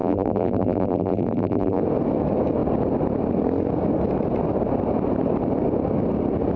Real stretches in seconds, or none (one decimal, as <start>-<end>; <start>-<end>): 1.8-6.6